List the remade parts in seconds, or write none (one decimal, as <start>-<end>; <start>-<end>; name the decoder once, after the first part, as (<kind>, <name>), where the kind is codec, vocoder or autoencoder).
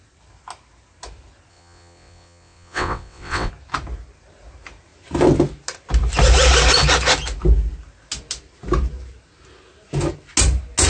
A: 1.5-3.5 (vocoder, WaveNeXt)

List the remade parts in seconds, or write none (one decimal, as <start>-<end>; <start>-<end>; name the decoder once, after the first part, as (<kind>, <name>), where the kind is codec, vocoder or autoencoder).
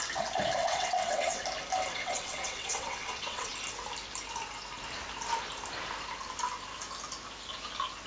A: 0.6-1.4 (vocoder, WaveNeXt); 1.9-3.5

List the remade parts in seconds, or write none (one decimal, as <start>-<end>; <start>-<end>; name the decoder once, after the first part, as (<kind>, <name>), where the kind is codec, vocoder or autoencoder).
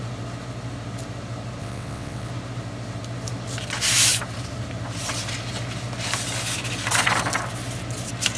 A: 1.6-2.3 (vocoder, WaveNeXt)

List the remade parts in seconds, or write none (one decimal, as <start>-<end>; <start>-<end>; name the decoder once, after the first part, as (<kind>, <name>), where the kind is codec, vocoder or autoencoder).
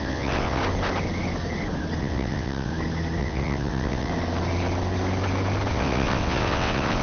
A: 0.0-0.6 (vocoder, WaveNeXt); 2.0-2.7; 3.2-4.1; 5.7-7.0